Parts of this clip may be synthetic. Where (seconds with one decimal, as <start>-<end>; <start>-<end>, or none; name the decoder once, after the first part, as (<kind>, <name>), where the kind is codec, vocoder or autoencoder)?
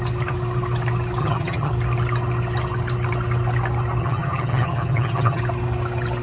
1.2-1.7 (vocoder, HiFi-GAN); 4.0-5.4